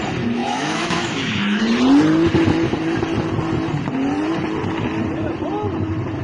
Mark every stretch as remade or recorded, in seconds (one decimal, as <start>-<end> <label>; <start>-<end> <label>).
0.0-0.4 recorded; 0.4-1.6 remade; 1.6-6.2 recorded